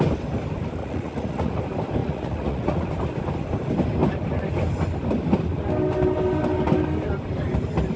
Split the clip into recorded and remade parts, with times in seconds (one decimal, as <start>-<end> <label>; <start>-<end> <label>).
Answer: 0.0-0.8 recorded; 0.8-1.6 remade; 1.6-2.0 recorded; 2.0-2.9 remade; 2.9-8.0 recorded